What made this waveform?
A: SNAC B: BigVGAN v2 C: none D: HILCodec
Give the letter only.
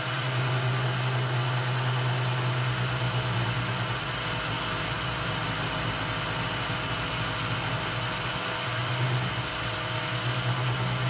C